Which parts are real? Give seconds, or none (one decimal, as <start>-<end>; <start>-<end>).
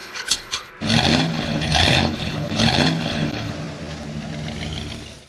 0.7-1.1; 3.5-5.3